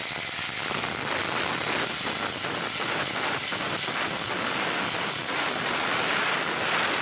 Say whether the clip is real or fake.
real